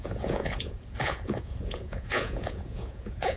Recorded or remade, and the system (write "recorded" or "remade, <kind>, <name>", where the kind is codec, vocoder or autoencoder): remade, vocoder, Vocos